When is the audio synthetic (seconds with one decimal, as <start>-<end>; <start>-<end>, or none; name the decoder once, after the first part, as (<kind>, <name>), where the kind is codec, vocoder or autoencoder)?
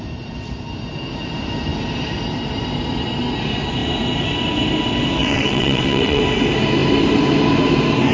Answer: 5.2-6.2 (vocoder, WaveNeXt)